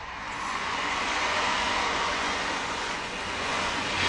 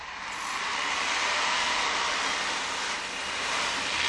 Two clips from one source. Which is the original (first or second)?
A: second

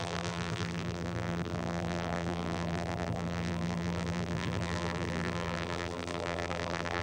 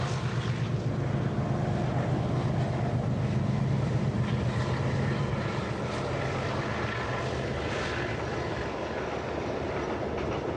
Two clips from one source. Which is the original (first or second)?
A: second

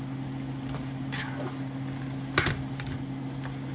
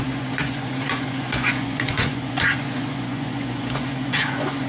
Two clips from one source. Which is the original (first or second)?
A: first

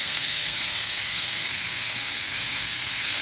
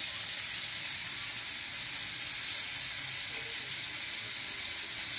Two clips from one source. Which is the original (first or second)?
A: second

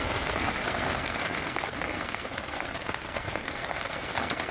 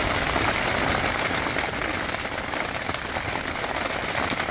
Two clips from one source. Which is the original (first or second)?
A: second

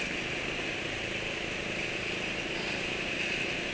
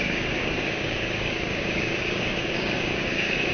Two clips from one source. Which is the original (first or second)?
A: first